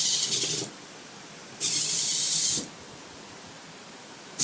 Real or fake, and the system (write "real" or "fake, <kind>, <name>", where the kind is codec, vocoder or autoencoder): real